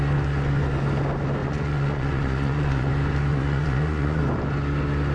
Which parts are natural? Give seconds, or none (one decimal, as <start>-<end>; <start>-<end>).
0.0-1.4; 2.9-3.3; 4.2-5.1